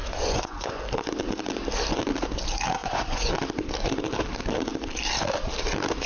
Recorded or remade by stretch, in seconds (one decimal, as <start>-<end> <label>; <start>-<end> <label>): 0.0-0.8 remade; 0.8-2.8 recorded; 2.8-3.3 remade; 3.3-6.1 recorded